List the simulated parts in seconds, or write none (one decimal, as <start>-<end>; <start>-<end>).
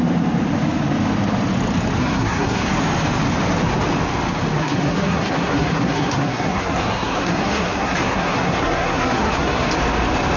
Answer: 2.0-2.7; 4.6-9.7